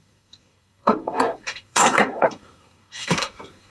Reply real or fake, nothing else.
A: fake